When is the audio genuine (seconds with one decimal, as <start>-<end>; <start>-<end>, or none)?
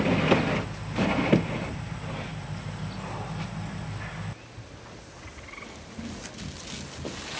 0.0-7.4